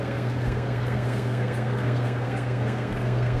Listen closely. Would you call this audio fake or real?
fake